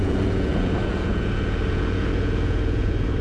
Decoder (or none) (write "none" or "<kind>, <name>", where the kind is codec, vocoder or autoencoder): vocoder, Vocos